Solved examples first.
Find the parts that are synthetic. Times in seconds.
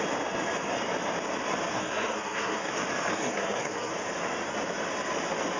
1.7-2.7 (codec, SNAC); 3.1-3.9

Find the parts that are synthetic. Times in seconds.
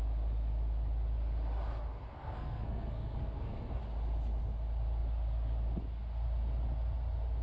2.1-3.8 (codec, SNAC)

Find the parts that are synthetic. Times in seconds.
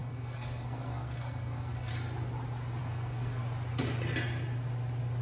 0.0-1.9 (codec, SNAC); 2.8-3.4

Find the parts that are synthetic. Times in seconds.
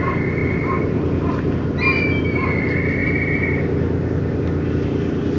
none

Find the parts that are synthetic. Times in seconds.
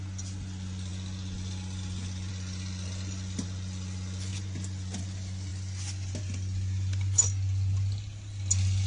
none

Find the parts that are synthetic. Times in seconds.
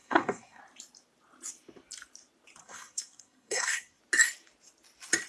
0.0-0.6 (codec, SNAC); 2.6-4.0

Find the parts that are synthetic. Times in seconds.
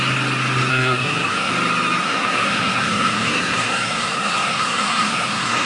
0.7-1.5 (codec, SNAC); 2.0-5.7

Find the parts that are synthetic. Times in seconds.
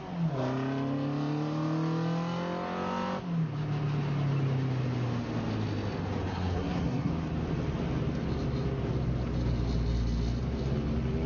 6.3-7.1 (codec, SNAC)